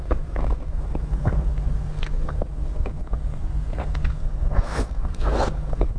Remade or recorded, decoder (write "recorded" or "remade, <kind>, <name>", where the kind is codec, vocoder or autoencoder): remade, codec, SNAC